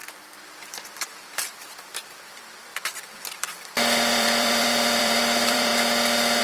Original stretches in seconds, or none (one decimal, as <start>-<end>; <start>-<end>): 5.7-6.4